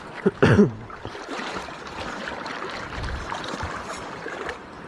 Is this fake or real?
fake